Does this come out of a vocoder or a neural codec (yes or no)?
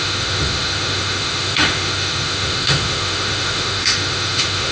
yes